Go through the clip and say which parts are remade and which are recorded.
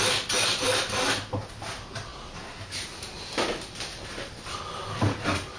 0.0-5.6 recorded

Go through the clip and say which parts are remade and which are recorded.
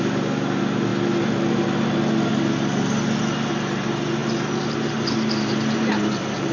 0.0-6.5 recorded